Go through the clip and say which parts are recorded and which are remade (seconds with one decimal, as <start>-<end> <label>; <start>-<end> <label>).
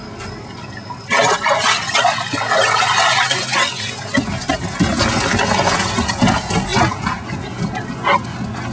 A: 0.0-1.3 remade; 1.3-8.7 recorded